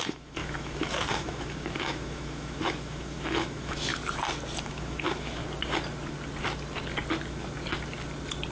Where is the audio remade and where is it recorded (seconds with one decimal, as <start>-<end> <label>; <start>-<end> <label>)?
0.0-3.9 remade; 3.9-4.6 recorded; 4.6-5.4 remade; 5.4-8.5 recorded